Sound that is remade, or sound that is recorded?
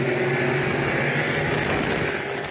recorded